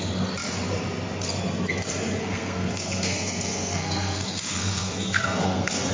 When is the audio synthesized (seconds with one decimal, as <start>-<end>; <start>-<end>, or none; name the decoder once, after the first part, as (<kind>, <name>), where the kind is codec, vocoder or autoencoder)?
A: 2.2-5.9 (codec, SNAC)